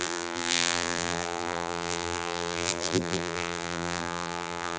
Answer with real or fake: fake